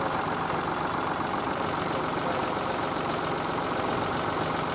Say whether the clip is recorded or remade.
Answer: recorded